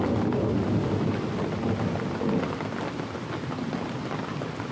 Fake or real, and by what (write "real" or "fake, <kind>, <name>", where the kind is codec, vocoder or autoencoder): real